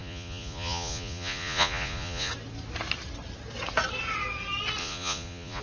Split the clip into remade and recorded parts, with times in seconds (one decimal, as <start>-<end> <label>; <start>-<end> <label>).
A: 0.0-2.3 remade; 2.3-4.8 recorded; 4.8-5.6 remade